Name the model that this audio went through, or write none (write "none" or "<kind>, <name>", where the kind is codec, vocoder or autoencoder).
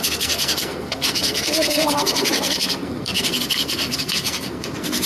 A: codec, SNAC